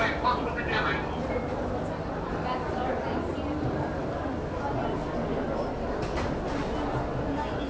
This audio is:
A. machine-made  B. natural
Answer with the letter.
B